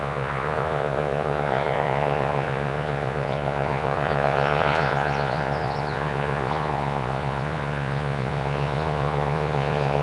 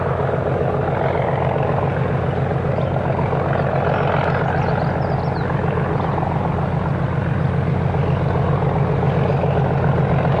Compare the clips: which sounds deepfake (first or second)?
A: first